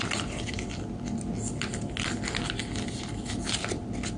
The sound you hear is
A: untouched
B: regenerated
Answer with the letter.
A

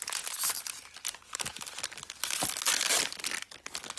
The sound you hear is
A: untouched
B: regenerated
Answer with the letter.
A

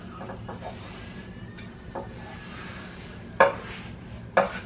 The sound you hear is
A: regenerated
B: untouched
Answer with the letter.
B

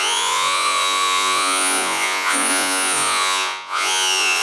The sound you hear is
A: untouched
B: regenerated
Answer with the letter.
B